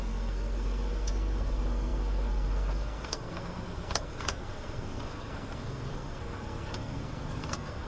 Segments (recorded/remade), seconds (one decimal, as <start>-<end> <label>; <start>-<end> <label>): 0.0-7.9 remade

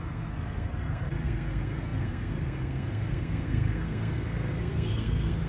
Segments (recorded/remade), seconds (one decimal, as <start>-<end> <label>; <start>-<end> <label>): 0.0-5.5 remade

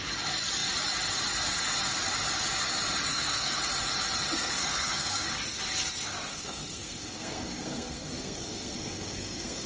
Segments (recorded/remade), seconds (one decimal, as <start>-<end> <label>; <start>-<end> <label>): 0.0-3.1 recorded; 3.1-3.6 remade; 3.6-4.4 recorded; 4.4-5.3 remade; 5.3-6.3 recorded; 6.3-9.7 remade

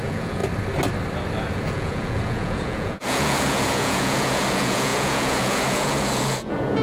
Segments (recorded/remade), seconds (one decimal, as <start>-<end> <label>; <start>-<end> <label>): 0.0-0.4 remade; 0.4-1.5 recorded; 1.5-6.8 remade

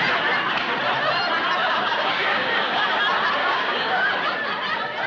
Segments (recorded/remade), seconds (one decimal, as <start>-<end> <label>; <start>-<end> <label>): 0.0-1.6 recorded; 1.6-3.0 remade; 3.0-3.4 recorded; 3.4-4.1 remade; 4.1-5.1 recorded